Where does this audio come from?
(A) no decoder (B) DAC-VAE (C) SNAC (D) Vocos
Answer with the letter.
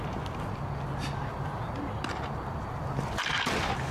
A